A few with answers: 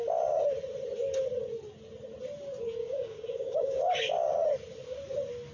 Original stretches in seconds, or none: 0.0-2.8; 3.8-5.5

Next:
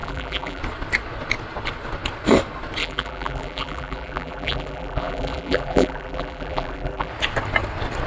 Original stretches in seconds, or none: 0.6-2.8; 7.1-8.1

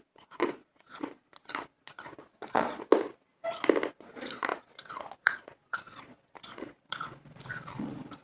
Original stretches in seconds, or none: 2.9-3.9

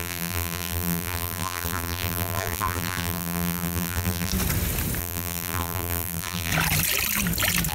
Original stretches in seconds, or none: 4.3-5.0; 6.5-7.7

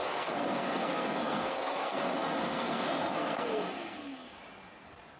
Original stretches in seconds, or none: 2.0-2.4; 4.4-5.2